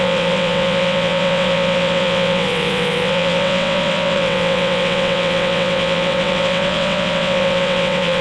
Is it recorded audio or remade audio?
remade